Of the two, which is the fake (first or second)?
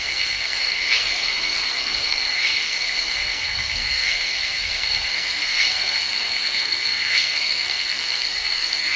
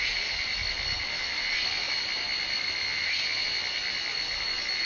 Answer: first